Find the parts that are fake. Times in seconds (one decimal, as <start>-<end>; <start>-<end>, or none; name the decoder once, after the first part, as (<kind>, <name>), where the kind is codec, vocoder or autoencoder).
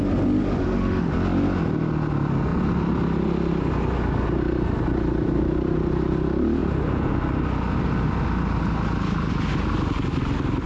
0.6-1.1 (autoencoder, DAC-VAE)